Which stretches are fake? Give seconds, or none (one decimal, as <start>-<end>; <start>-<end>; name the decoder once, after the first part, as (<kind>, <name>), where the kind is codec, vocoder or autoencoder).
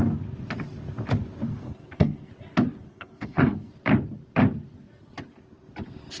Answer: 1.5-2.3 (codec, SNAC); 2.9-3.7